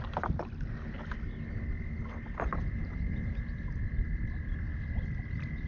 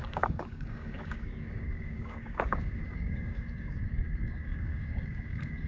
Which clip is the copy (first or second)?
second